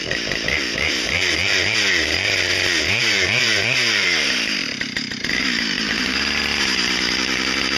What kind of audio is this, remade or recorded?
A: remade